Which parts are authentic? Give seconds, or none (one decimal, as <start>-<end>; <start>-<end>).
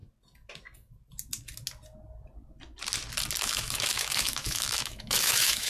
0.0-3.4